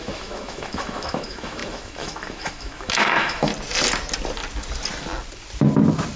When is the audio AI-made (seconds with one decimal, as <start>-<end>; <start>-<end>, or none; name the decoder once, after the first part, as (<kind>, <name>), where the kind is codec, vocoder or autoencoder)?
0.0-3.5 (autoencoder, DAC-VAE)